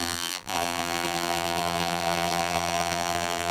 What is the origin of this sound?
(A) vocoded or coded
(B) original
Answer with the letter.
A